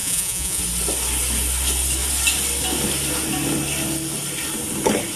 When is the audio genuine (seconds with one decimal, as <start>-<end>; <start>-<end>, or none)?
0.6-5.2